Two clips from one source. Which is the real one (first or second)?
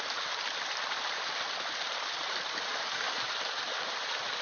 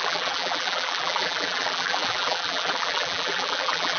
first